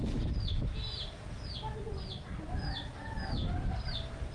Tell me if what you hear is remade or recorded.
recorded